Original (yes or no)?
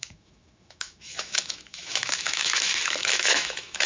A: no